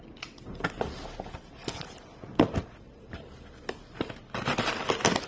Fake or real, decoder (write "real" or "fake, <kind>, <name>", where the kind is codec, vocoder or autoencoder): real